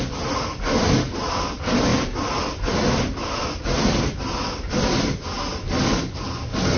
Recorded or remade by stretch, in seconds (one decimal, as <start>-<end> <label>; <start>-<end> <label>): 0.0-6.8 recorded